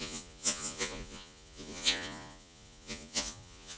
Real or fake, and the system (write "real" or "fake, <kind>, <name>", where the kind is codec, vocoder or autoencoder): fake, vocoder, Vocos